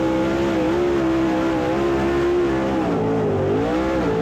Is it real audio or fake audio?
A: real